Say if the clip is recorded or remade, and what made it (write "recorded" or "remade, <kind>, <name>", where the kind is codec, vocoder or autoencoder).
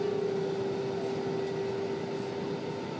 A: recorded